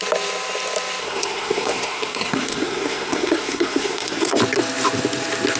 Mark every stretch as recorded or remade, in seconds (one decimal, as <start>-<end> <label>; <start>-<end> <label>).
0.0-1.0 recorded; 1.0-4.4 remade; 4.4-5.6 recorded